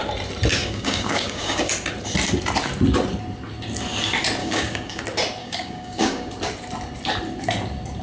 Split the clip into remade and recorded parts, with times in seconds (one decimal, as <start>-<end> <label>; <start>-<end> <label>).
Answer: 0.0-0.6 recorded; 0.6-1.7 remade; 1.7-4.4 recorded; 4.4-5.0 remade; 5.0-5.4 recorded; 5.4-6.3 remade; 6.3-8.0 recorded

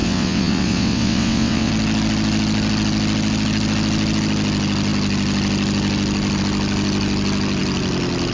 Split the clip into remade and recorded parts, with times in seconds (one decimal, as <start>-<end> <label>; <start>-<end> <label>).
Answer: 0.0-1.7 remade; 1.7-8.3 recorded

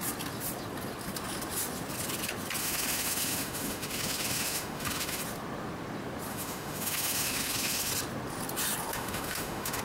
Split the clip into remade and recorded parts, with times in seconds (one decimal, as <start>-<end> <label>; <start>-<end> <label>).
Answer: 0.0-2.6 recorded; 2.6-5.2 remade; 5.2-6.3 recorded; 6.3-7.9 remade; 7.9-8.9 recorded; 8.9-9.8 remade

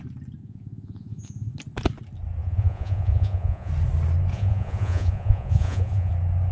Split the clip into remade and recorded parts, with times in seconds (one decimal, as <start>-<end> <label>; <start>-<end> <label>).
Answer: 0.0-0.4 recorded; 0.4-1.5 remade; 1.5-2.4 recorded; 2.4-3.7 remade; 3.7-4.3 recorded; 4.3-6.1 remade; 6.1-6.5 recorded

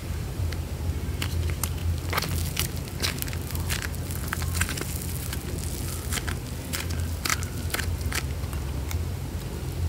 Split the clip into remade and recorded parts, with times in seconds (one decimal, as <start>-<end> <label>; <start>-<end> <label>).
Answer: 0.0-0.5 remade; 0.5-7.3 recorded; 7.3-8.1 remade; 8.1-9.9 recorded

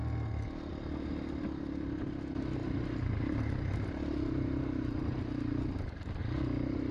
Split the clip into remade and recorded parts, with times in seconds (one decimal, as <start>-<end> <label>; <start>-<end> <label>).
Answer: 0.0-2.6 recorded; 2.6-6.2 remade; 6.2-6.9 recorded

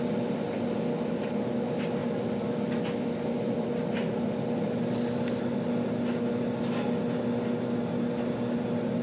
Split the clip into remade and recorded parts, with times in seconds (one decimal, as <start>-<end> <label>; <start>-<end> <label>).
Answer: 0.0-9.0 recorded